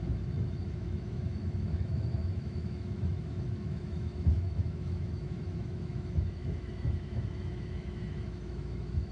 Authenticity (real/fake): fake